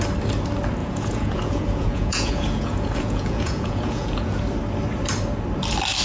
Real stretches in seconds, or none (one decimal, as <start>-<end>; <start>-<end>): 0.0-0.8; 4.4-6.0